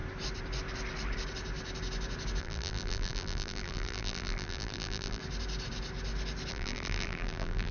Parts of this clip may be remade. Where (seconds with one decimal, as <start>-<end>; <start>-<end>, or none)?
2.4-5.2; 6.5-7.7